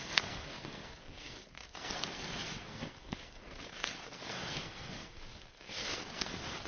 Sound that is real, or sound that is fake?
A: fake